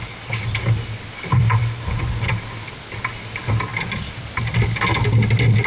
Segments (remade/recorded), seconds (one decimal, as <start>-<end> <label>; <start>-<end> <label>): 0.0-1.3 recorded; 1.3-2.0 remade; 2.0-5.7 recorded